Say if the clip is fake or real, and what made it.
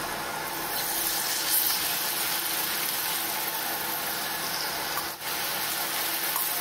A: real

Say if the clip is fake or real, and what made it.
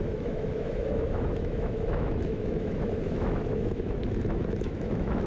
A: fake, autoencoder, DAC-VAE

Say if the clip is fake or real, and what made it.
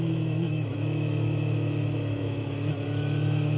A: fake, autoencoder, DAC-VAE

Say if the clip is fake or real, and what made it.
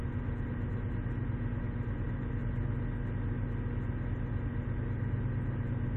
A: real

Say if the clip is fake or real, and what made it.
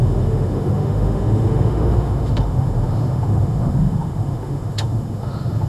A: fake, autoencoder, DAC-VAE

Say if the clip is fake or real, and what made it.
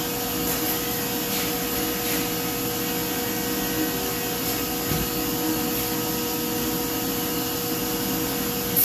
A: real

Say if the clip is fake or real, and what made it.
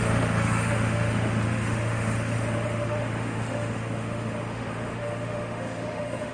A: fake, autoencoder, DAC-VAE